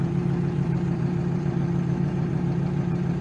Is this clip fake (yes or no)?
yes